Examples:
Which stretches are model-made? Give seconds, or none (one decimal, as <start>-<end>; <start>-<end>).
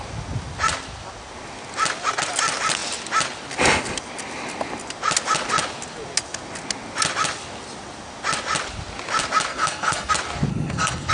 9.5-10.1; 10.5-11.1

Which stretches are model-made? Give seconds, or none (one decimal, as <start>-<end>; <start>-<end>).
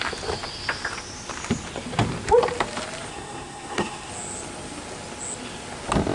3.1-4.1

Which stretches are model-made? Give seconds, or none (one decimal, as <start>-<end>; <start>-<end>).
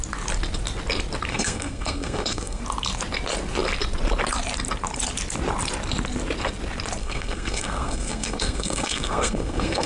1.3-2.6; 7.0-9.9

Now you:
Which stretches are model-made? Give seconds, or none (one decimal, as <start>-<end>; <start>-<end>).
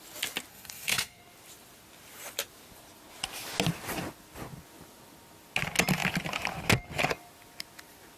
0.5-1.2